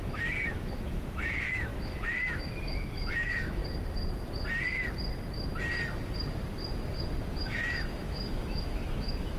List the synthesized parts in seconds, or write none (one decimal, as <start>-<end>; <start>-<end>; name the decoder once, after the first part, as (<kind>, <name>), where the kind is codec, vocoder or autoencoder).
0.0-3.6 (autoencoder, DAC-VAE); 7.4-9.4